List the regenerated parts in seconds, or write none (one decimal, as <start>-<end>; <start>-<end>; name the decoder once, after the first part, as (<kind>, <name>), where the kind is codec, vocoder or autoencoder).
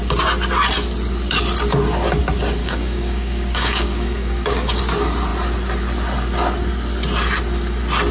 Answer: 2.6-4.8 (codec, DAC)